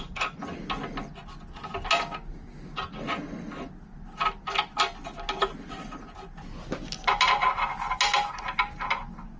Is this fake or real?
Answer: real